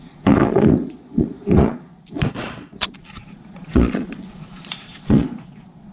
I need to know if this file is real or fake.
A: fake